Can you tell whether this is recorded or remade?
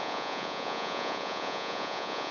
remade